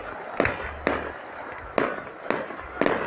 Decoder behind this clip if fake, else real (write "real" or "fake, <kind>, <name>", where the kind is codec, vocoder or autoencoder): real